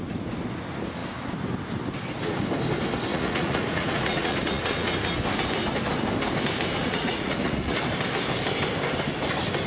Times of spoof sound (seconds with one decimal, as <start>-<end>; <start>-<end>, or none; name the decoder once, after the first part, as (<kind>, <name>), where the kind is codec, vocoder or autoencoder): 3.1-4.9 (vocoder, Vocos); 6.8-7.8